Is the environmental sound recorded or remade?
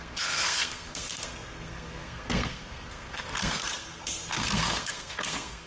remade